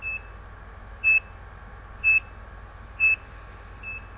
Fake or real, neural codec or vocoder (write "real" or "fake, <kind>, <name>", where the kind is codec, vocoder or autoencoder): real